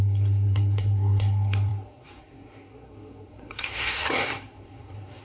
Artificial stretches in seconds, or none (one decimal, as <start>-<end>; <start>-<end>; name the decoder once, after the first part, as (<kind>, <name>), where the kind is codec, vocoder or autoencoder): 0.0-5.2 (codec, SNAC)